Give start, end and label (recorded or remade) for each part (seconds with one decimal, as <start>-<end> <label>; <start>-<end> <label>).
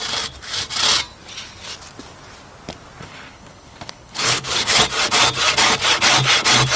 0.0-3.0 recorded; 3.0-4.8 remade; 4.8-6.8 recorded